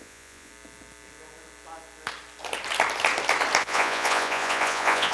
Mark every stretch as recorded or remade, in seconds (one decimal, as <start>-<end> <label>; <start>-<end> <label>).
0.0-0.5 remade; 0.5-3.6 recorded; 3.6-5.1 remade